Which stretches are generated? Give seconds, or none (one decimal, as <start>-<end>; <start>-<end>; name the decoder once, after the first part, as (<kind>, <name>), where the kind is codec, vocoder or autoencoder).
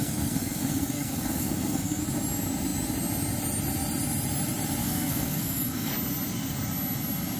0.0-2.0 (codec, SNAC); 4.8-5.9